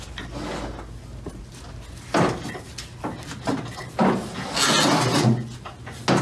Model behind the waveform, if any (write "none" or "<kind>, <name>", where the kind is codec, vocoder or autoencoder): none